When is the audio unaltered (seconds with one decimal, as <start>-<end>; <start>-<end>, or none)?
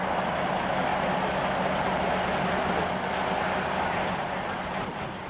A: 0.9-4.1